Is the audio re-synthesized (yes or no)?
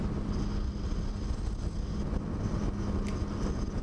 no